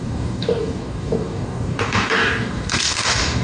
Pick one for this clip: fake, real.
fake